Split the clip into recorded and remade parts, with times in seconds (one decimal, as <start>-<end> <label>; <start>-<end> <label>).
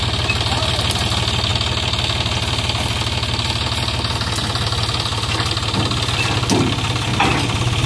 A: 0.0-7.9 recorded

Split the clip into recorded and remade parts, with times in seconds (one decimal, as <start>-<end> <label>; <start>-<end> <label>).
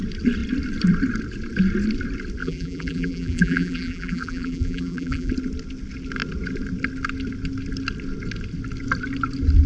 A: 0.0-2.4 recorded; 2.4-5.3 remade; 5.3-9.7 recorded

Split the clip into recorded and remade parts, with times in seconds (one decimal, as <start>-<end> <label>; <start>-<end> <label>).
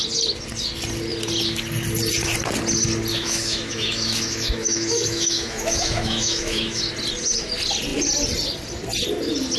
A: 0.0-3.1 recorded; 3.1-6.8 remade; 6.8-9.6 recorded